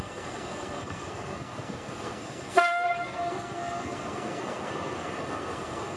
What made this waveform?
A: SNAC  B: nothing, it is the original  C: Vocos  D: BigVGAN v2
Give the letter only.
A